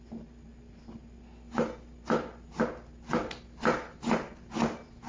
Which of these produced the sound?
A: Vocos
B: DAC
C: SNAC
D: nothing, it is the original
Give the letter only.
D